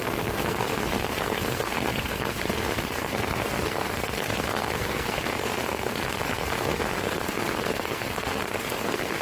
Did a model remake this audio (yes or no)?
yes